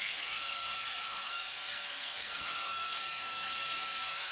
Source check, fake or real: fake